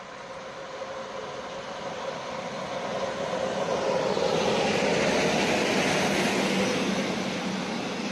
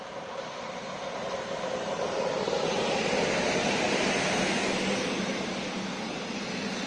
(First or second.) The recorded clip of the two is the first